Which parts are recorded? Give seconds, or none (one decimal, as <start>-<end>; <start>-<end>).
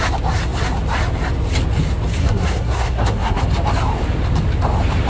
0.0-2.2; 3.4-5.1